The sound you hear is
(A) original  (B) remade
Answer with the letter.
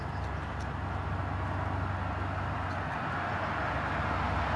A